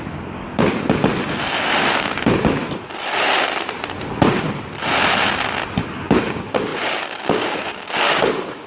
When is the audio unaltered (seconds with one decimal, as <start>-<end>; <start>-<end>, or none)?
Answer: 1.0-1.8; 2.6-5.9